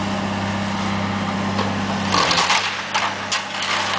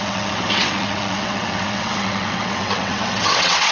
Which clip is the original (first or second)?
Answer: first